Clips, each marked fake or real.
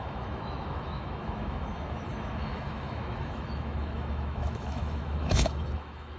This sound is fake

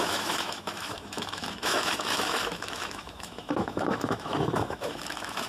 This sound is fake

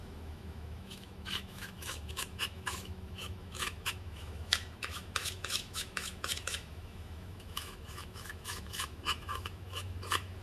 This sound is fake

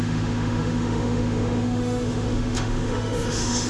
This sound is fake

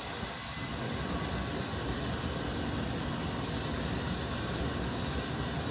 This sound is real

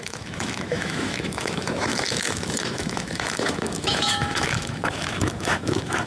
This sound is fake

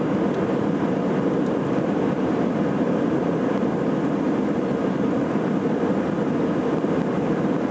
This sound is real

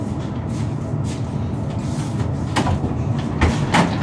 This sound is real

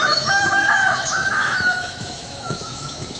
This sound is fake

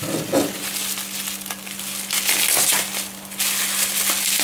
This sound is real